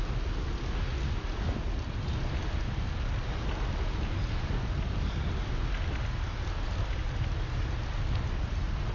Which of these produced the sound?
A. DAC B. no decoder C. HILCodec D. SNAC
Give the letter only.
B